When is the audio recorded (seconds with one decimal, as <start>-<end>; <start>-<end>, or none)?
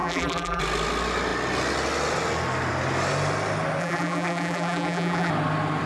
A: 0.6-3.8; 5.3-5.9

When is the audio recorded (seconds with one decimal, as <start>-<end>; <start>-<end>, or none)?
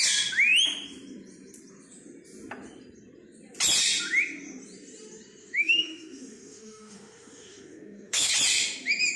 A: 0.0-5.4; 8.3-9.2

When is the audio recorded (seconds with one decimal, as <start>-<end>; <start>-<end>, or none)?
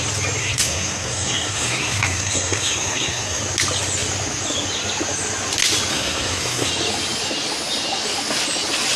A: 0.0-0.4; 3.4-5.9; 6.7-9.0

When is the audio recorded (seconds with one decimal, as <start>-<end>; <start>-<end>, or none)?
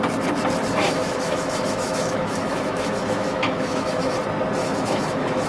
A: 0.0-0.8; 4.1-4.6